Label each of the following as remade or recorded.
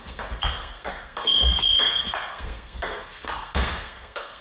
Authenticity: remade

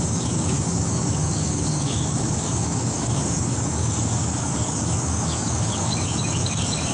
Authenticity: remade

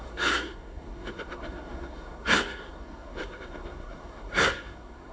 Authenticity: remade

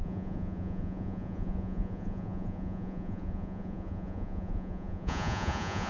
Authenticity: remade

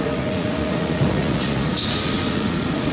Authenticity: remade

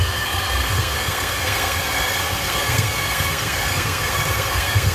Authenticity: remade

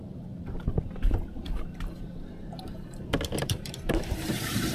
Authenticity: remade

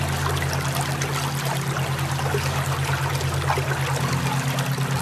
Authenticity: recorded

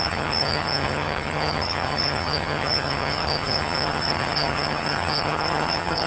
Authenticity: remade